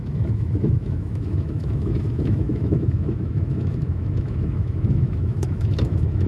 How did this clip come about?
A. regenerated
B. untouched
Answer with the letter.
A